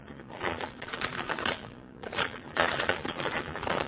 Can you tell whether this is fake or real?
fake